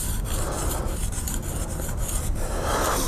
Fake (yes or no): no